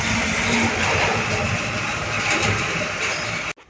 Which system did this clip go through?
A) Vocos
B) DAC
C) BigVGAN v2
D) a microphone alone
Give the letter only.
D